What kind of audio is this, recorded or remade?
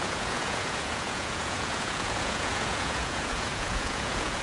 remade